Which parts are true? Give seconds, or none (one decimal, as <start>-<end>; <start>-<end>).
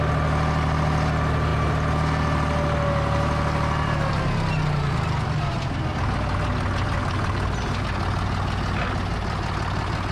0.0-10.1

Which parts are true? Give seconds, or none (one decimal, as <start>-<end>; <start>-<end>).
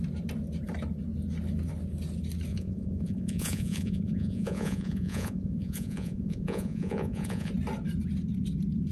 0.0-2.5; 7.5-8.9